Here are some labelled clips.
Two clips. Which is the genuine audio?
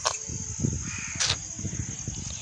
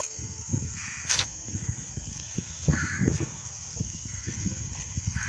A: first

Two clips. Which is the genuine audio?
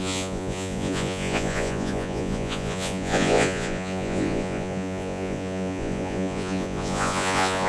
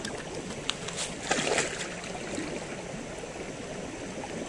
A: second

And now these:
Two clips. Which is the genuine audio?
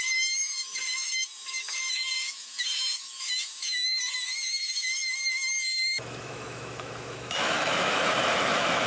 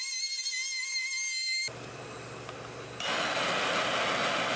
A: second